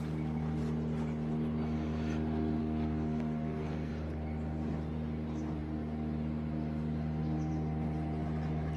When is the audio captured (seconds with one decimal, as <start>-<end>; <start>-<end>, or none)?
0.0-2.6; 3.9-8.8